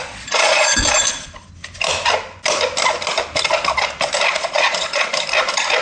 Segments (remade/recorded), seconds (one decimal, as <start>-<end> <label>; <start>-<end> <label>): 0.0-0.8 remade; 0.8-4.3 recorded; 4.3-5.1 remade; 5.1-5.8 recorded